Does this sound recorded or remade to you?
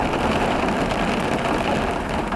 recorded